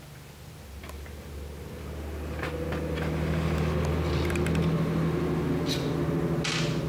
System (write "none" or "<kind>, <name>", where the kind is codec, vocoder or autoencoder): none